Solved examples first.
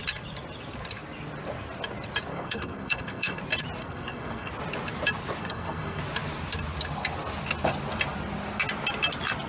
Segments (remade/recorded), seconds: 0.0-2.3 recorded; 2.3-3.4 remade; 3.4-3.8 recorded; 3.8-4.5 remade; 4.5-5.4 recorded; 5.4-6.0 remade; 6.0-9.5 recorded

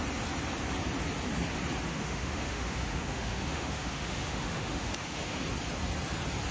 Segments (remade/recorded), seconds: 0.0-1.9 recorded; 1.9-5.4 remade; 5.4-6.5 recorded

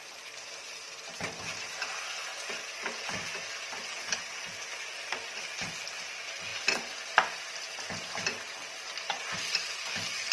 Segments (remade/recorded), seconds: 0.0-10.3 recorded

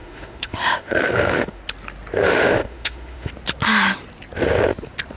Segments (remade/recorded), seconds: 0.0-1.6 remade; 1.6-2.2 recorded; 2.2-3.3 remade; 3.3-5.2 recorded

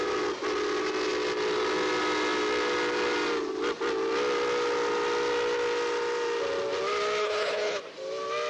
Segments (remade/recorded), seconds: 0.0-7.2 recorded; 7.2-7.8 remade; 7.8-8.5 recorded

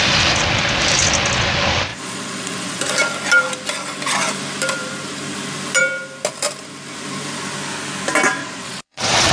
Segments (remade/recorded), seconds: 0.0-1.9 recorded; 1.9-2.8 remade; 2.8-8.4 recorded; 8.4-9.3 remade

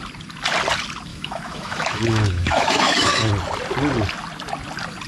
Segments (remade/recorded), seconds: 0.0-1.1 recorded; 1.1-3.3 remade; 3.3-5.1 recorded